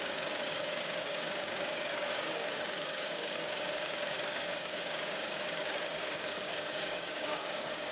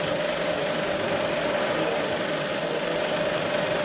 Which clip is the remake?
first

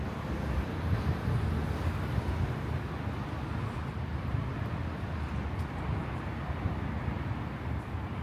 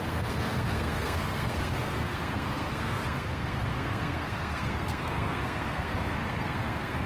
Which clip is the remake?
second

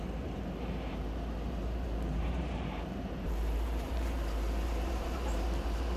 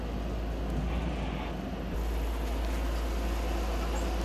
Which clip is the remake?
first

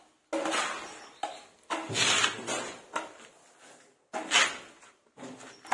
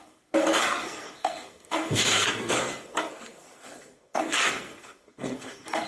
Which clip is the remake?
second